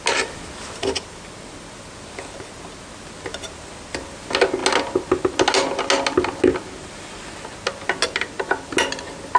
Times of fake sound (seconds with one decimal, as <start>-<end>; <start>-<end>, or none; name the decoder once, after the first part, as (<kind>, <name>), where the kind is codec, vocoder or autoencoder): none